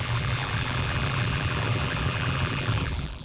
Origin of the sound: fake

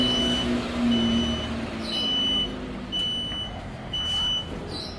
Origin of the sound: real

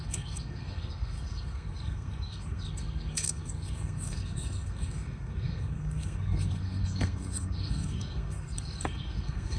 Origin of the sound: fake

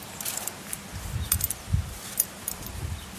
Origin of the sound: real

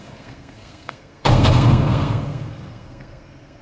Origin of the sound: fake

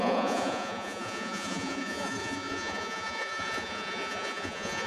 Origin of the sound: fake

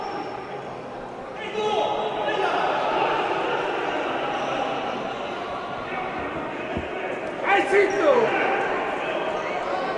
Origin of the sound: real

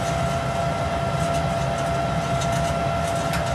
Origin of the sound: real